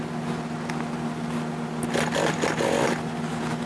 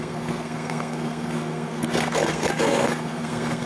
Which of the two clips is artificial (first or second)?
second